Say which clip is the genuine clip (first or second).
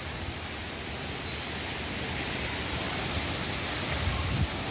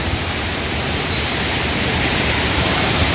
first